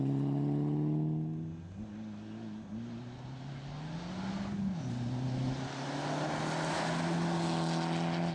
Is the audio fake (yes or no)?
no